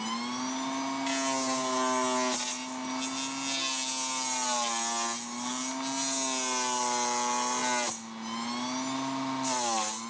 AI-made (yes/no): no